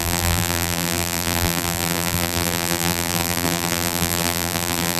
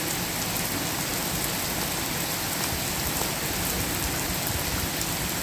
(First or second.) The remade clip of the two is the first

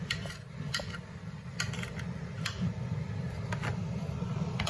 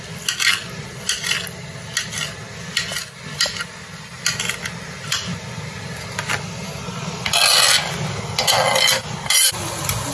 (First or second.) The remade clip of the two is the first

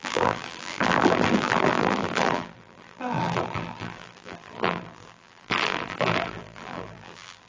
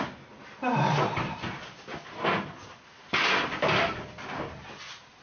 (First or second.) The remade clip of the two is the first